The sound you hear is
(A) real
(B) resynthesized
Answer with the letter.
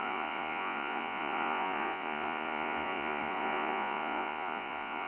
B